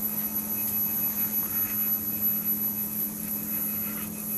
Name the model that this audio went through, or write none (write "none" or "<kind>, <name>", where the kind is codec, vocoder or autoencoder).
none